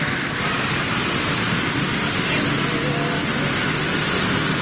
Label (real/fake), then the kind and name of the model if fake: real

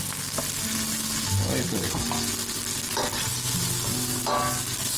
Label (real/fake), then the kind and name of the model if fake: real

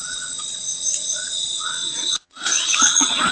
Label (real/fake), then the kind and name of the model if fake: fake, vocoder, Vocos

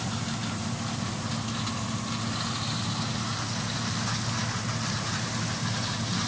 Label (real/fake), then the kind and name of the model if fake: real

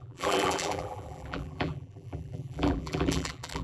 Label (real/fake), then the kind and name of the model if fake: fake, vocoder, BigVGAN v2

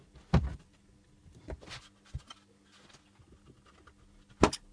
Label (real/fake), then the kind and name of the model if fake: real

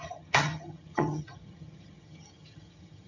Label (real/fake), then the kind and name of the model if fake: fake, vocoder, HiFi-GAN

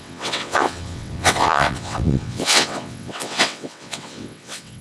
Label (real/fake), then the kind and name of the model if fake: fake, vocoder, WaveNeXt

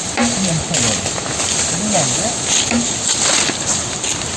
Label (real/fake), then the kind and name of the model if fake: real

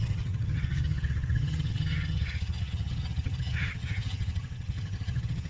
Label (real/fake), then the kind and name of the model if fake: fake, vocoder, HiFi-GAN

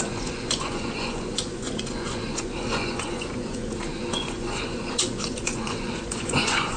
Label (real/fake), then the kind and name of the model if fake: fake, vocoder, Vocos